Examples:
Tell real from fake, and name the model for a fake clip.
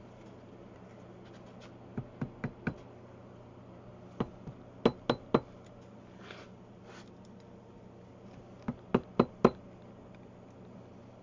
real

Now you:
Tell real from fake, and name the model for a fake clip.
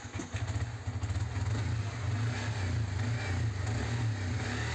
real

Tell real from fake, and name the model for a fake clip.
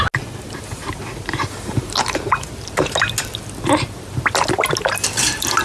real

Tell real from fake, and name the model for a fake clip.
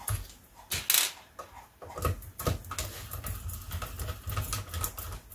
real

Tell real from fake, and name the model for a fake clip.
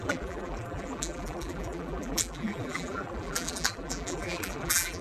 fake, vocoder, BigVGAN v2